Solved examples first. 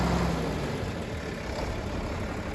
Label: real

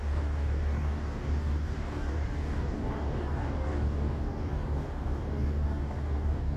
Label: fake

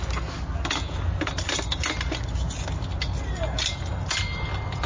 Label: real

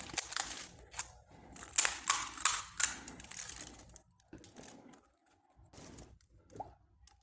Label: real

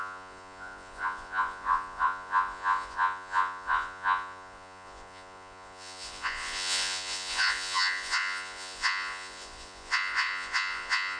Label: fake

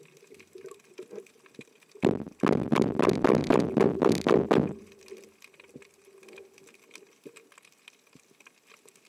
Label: real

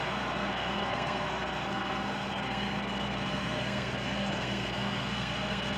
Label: fake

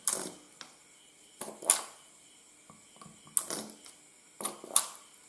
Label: real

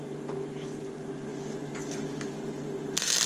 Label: real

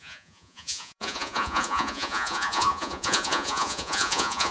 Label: fake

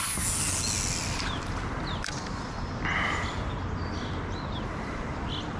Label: real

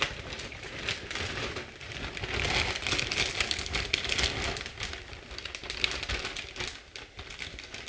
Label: real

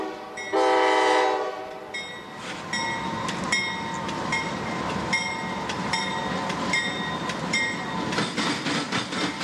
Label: real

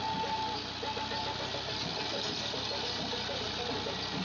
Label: real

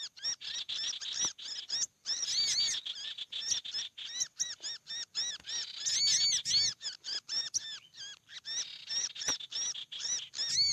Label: real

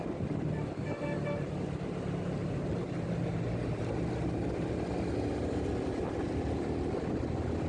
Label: real